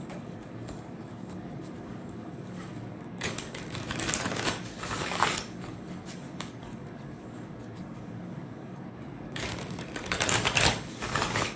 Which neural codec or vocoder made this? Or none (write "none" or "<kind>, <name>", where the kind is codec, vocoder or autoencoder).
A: codec, DAC